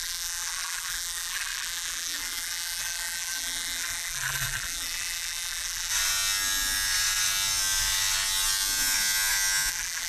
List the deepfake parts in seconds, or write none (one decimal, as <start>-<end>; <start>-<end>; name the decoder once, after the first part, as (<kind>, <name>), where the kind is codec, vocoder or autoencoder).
0.0-5.9 (vocoder, BigVGAN v2); 9.7-10.1